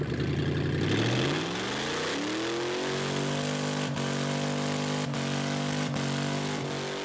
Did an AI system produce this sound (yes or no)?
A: no